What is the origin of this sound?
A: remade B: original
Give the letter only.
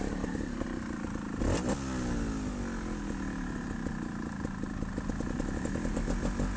B